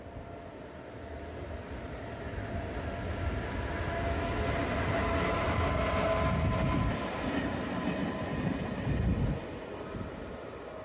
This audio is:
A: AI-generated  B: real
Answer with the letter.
B